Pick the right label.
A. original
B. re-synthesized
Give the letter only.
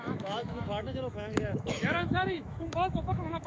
B